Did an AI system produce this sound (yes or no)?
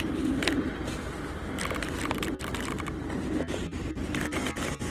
no